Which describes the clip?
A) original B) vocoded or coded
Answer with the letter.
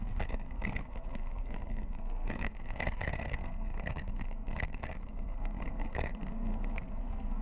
B